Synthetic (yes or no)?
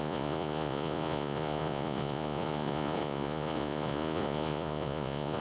yes